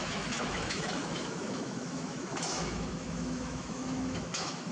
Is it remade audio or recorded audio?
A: remade